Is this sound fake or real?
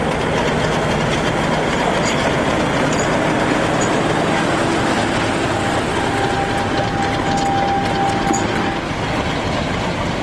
real